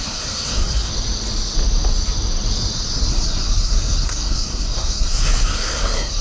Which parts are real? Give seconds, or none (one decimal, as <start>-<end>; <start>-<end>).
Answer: 0.9-3.1